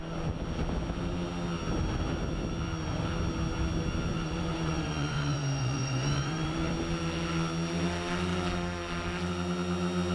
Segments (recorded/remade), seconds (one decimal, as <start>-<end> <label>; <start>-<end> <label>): 0.0-4.1 recorded; 4.1-6.7 remade; 6.7-10.1 recorded